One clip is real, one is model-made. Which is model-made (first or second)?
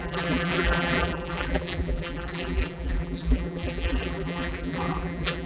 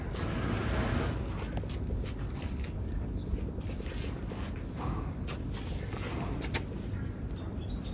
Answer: first